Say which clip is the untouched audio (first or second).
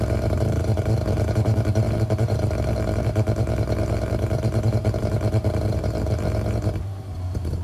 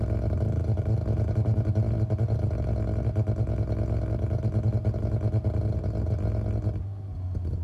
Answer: second